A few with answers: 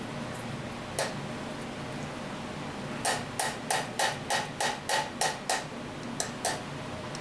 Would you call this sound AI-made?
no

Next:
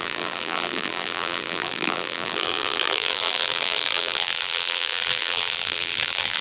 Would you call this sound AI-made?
yes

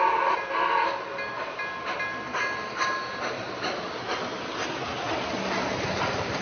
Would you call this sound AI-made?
no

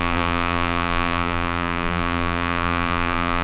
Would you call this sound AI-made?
yes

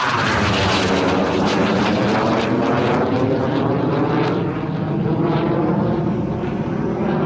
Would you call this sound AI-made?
no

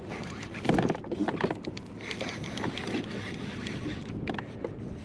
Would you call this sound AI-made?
no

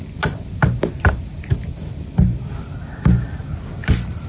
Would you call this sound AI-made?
no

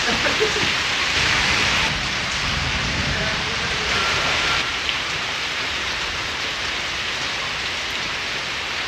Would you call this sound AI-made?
yes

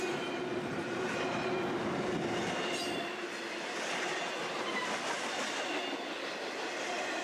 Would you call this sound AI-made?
no